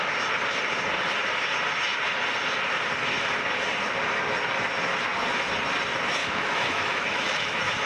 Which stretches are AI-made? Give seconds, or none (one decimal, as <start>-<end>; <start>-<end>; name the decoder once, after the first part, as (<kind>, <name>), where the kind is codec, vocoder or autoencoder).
6.2-7.9 (autoencoder, DAC-VAE)